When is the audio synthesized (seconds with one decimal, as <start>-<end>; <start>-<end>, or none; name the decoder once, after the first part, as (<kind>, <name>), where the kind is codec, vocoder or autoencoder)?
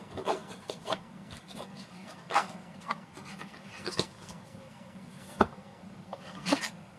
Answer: 0.0-7.0 (codec, SNAC)